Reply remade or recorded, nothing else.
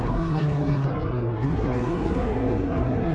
remade